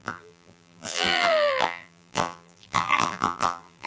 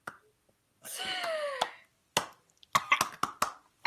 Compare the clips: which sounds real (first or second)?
second